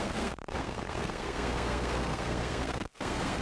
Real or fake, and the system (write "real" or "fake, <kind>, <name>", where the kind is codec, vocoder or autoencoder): fake, codec, SNAC